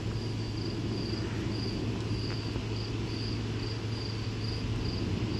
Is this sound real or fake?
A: real